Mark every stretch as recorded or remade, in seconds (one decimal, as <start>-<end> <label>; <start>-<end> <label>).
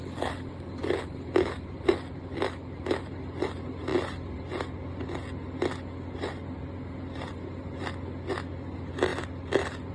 0.0-9.9 recorded